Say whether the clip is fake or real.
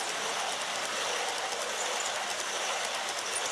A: real